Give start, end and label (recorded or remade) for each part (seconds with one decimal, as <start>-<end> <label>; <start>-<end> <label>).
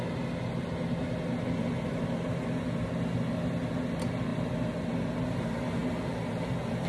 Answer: 0.0-6.9 recorded